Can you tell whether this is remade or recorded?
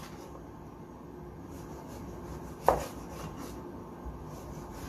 recorded